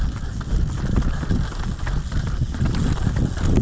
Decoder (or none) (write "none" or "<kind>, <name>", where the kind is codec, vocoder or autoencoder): none